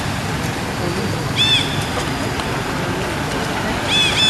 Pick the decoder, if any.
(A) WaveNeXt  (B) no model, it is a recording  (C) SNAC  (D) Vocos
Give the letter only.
B